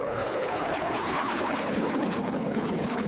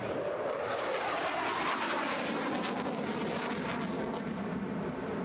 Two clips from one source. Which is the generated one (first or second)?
first